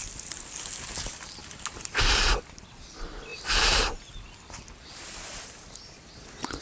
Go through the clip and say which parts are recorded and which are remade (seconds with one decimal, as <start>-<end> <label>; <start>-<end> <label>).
0.0-6.6 recorded